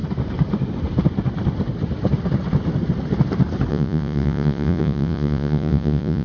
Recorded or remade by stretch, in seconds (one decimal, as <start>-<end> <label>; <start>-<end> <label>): 0.0-3.7 recorded; 3.7-6.2 remade